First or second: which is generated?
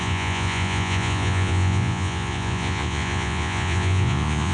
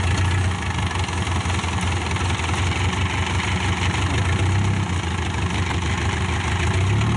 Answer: first